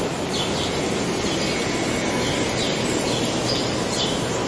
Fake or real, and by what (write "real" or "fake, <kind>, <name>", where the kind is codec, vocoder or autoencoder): real